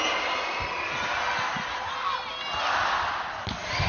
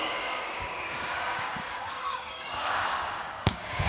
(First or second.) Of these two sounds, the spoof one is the second